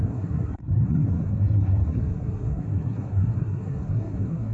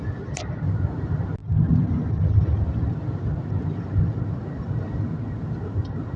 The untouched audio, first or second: second